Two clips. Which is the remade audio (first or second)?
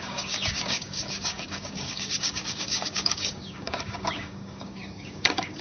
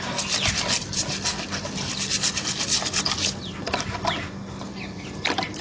first